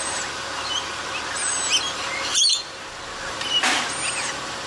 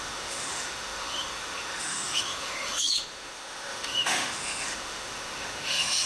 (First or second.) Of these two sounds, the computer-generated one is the second